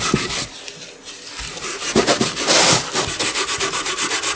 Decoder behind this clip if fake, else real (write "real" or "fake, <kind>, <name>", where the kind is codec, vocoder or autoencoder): real